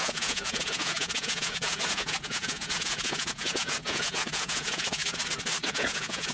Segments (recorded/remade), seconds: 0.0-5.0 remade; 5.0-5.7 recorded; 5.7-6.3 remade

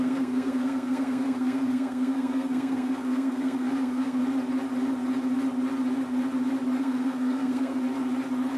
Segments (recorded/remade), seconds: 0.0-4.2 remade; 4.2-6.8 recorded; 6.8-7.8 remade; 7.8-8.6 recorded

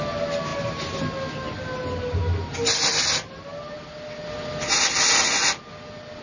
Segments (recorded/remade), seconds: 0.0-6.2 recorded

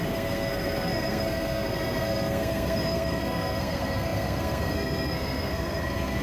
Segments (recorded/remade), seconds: 0.0-6.2 remade

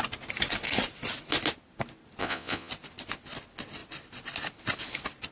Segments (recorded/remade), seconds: 0.0-2.2 recorded; 2.2-2.7 remade; 2.7-5.3 recorded